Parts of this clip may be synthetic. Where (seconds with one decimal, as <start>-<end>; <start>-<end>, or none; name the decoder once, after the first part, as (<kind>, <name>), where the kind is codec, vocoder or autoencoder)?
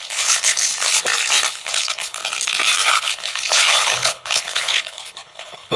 0.0-0.7 (codec, HILCodec); 1.5-2.2; 2.9-5.8